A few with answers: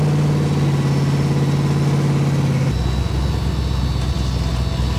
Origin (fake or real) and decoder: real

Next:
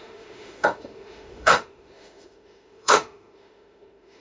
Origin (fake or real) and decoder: fake, autoencoder, DAC-VAE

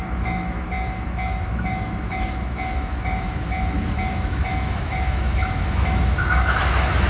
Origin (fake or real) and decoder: fake, autoencoder, DAC-VAE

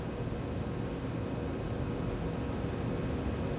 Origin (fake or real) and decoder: real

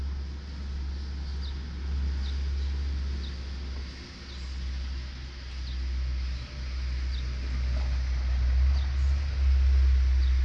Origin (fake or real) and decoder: real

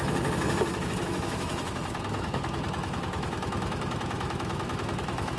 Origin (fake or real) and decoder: fake, autoencoder, DAC-VAE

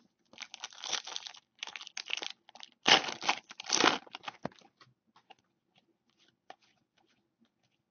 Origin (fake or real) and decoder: real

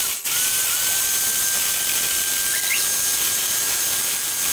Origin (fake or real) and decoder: real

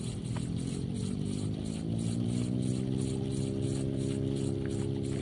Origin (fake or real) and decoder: real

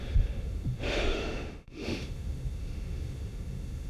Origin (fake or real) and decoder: fake, autoencoder, DAC-VAE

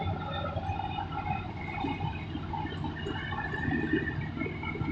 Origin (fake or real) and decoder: real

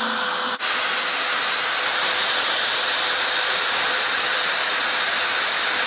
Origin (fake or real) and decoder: real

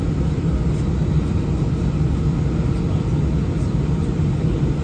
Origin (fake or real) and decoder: real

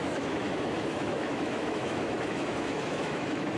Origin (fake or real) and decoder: fake, autoencoder, DAC-VAE